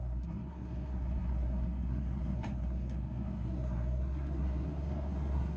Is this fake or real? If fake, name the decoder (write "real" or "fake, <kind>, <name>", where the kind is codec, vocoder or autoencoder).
fake, codec, SNAC